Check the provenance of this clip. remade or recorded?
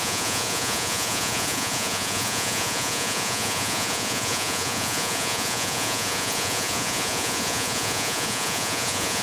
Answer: remade